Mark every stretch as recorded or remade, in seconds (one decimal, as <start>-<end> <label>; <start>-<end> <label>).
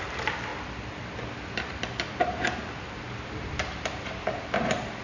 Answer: 0.0-0.5 remade; 0.5-3.5 recorded; 3.5-5.0 remade